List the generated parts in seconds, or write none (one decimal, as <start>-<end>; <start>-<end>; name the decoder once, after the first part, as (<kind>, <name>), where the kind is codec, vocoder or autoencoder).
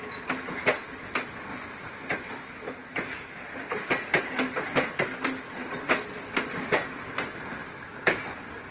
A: none